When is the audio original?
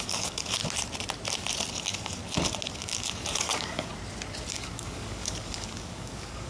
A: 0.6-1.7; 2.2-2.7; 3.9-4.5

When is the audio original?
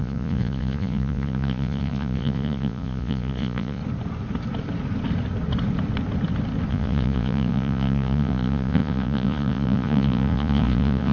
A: 3.8-6.7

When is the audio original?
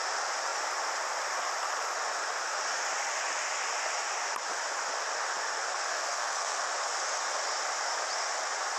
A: 0.0-5.9; 6.6-8.8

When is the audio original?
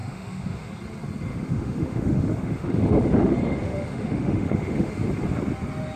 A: 0.7-1.3; 4.9-6.0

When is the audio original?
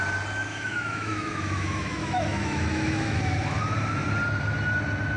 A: 0.0-0.5; 3.6-5.2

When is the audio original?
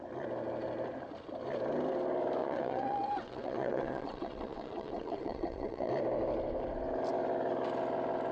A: 0.0-2.4; 5.9-8.3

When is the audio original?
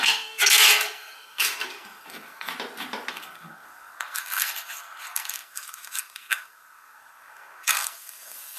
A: 2.5-3.1